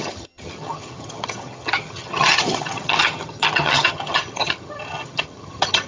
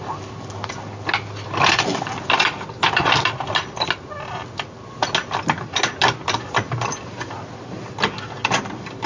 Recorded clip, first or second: second